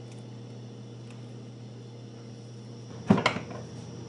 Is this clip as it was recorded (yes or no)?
yes